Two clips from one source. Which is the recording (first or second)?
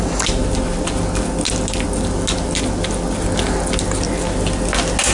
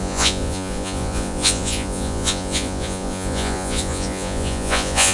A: first